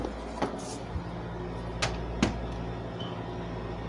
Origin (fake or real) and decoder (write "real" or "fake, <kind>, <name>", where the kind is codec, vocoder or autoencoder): real